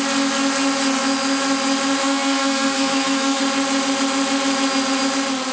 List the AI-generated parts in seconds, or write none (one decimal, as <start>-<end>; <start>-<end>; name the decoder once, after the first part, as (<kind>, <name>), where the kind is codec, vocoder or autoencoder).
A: 2.0-3.4 (codec, SNAC)